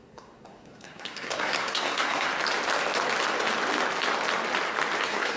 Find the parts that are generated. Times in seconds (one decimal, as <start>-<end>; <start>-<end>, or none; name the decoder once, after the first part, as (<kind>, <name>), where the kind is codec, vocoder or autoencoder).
0.0-2.3 (codec, SNAC); 5.0-5.4